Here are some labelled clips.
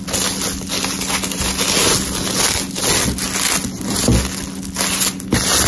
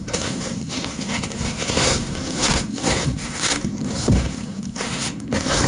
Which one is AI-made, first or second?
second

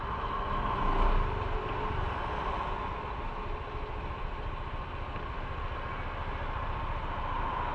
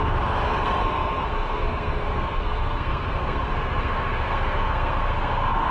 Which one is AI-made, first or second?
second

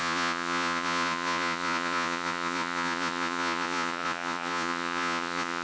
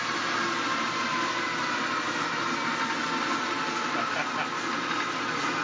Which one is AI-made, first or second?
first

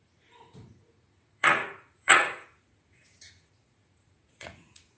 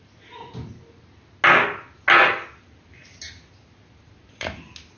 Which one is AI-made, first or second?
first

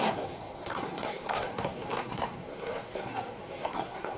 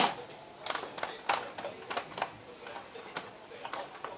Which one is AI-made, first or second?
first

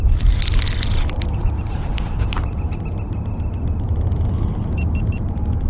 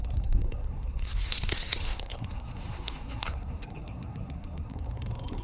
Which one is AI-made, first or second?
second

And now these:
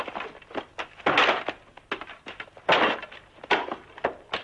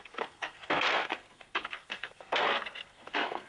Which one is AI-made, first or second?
second